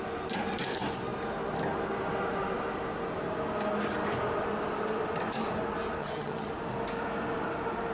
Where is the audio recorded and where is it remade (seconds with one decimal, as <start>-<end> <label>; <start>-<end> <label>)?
0.0-6.0 recorded; 6.0-6.5 remade; 6.5-7.9 recorded